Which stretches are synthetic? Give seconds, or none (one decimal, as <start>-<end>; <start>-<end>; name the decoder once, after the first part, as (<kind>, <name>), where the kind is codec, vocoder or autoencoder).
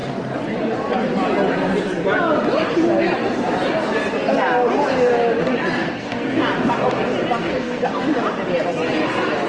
5.8-6.4 (codec, SNAC); 7.4-8.0